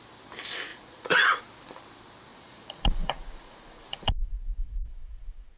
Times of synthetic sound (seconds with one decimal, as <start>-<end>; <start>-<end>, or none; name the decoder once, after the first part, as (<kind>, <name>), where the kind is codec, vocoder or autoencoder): 0.7-1.4 (vocoder, Vocos); 2.3-5.6